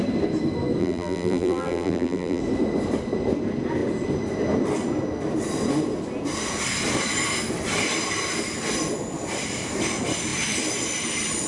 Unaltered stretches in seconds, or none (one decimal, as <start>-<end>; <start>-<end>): 0.0-0.8; 2.4-11.5